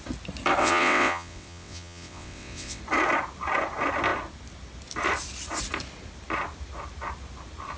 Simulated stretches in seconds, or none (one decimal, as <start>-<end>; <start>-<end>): 0.6-2.8